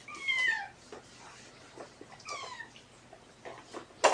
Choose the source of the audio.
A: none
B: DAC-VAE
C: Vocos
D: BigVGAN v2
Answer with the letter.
A